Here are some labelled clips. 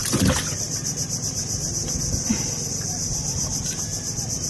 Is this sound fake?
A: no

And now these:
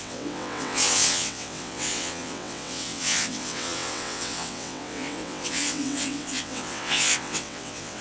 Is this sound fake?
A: yes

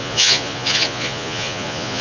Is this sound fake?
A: yes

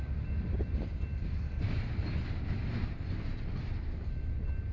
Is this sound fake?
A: no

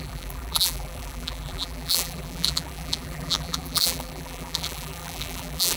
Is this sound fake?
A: yes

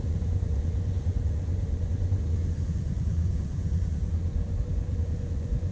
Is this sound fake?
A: yes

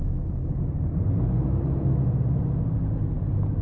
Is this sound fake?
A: no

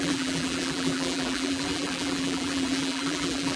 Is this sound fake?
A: yes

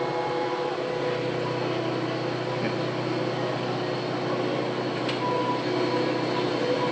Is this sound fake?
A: no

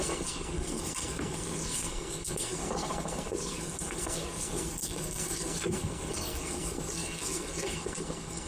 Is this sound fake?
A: yes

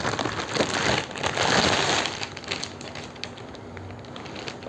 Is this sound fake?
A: no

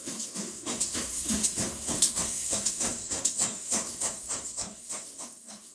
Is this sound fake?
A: yes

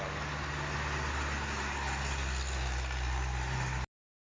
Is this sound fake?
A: no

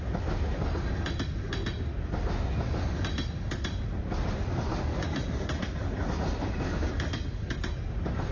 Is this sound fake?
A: no